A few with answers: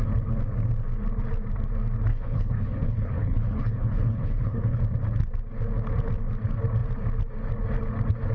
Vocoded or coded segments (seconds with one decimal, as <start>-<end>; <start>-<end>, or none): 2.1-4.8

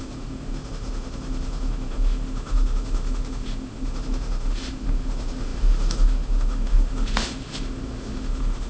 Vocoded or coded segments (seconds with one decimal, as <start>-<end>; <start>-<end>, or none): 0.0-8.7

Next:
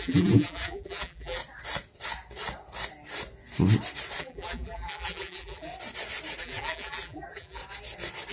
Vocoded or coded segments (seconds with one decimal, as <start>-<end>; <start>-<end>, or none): 0.0-1.4; 4.2-5.7; 6.4-7.6

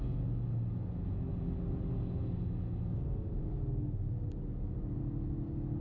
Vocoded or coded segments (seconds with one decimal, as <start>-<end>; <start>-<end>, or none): none

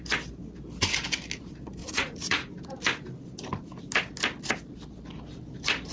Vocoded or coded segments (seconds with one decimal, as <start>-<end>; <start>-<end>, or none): 1.8-2.6

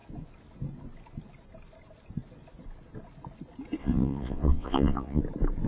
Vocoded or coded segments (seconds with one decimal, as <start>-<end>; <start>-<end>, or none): 3.8-5.2